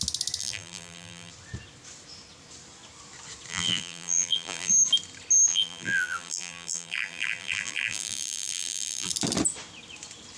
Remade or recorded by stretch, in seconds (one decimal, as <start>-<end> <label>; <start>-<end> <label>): 0.0-0.4 recorded; 0.4-1.3 remade; 1.3-3.5 recorded; 3.5-4.7 remade; 4.7-5.5 recorded; 5.5-9.1 remade; 9.1-10.4 recorded